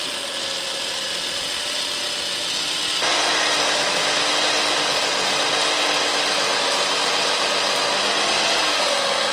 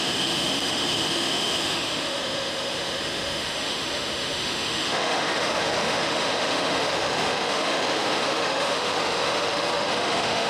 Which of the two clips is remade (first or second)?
second